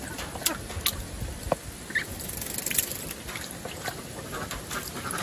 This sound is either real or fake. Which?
real